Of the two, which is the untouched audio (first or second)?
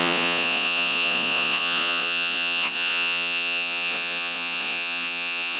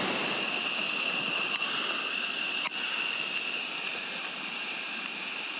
second